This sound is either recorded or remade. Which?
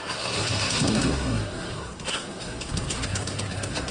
remade